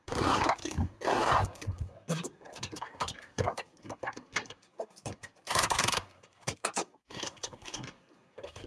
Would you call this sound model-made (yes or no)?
yes